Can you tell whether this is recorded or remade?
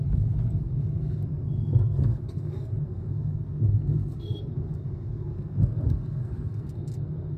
remade